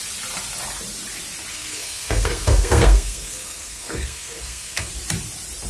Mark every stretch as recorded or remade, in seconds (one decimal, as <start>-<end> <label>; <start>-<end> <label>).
0.0-1.5 recorded; 1.5-4.9 remade; 4.9-5.7 recorded